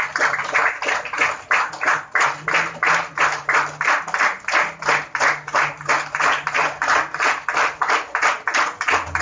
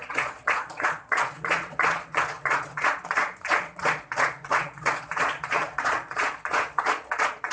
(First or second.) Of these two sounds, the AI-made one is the second